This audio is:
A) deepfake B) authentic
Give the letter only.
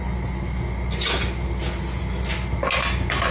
B